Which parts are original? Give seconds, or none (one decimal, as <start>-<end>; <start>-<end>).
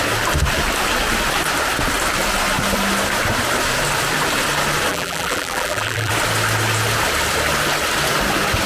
0.0-4.9; 6.1-8.7